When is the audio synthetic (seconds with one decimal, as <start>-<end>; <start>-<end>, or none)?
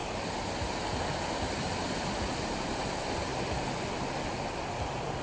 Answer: none